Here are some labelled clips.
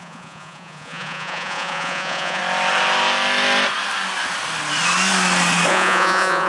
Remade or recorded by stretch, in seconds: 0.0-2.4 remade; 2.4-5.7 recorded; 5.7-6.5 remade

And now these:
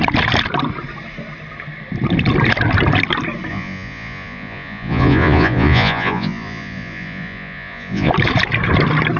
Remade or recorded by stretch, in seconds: 0.0-3.5 recorded; 3.5-8.1 remade; 8.1-9.2 recorded

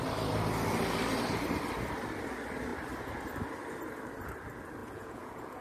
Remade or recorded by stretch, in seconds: 0.0-4.8 recorded; 4.8-5.6 remade

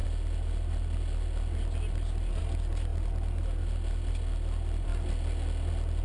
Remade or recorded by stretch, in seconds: 0.0-6.0 recorded

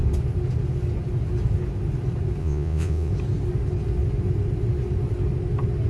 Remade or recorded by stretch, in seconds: 0.0-2.4 recorded; 2.4-3.1 remade; 3.1-5.9 recorded

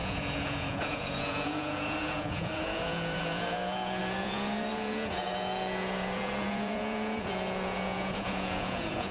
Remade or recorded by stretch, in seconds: 0.0-9.1 remade

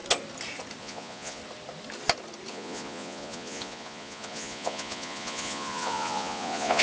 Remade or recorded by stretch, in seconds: 0.0-0.8 recorded; 0.8-1.4 remade; 1.4-2.5 recorded; 2.5-6.8 remade